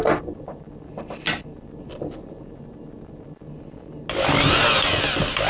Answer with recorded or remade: recorded